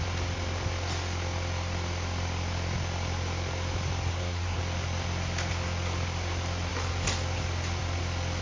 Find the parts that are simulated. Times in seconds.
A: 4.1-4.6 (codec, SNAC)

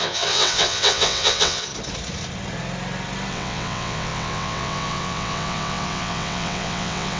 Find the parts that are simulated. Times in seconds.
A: 0.0-1.7 (vocoder, WaveNeXt); 3.3-7.2

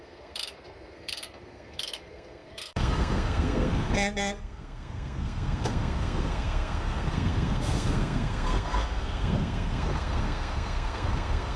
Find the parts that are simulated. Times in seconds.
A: 0.0-11.6 (codec, SNAC)